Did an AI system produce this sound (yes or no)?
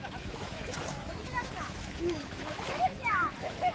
yes